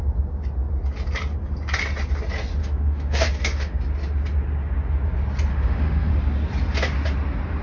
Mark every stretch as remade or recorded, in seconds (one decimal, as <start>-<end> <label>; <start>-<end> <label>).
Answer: 0.0-2.6 recorded; 2.6-3.8 remade; 3.8-5.5 recorded; 5.5-6.1 remade; 6.1-7.6 recorded